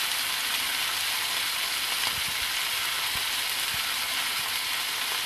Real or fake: real